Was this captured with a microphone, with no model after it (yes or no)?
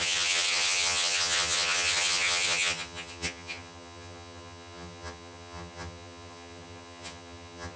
no